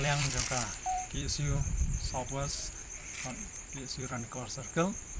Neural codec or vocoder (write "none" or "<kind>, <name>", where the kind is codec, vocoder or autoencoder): vocoder, BigVGAN v2